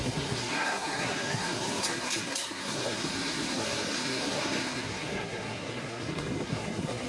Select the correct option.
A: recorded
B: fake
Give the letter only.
B